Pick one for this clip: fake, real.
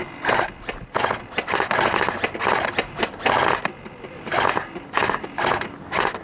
real